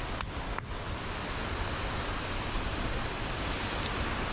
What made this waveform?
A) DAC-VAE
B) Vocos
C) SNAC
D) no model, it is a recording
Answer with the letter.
D